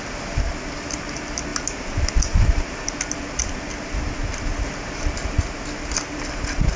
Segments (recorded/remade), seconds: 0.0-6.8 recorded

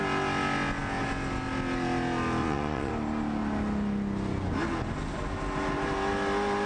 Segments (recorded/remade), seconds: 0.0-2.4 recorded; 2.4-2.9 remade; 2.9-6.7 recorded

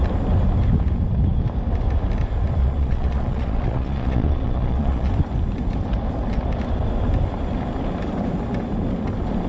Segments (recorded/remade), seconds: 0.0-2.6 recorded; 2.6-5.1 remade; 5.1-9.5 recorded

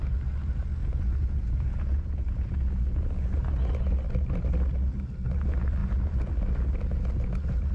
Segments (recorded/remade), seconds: 0.0-0.8 recorded; 0.8-3.4 remade; 3.4-7.7 recorded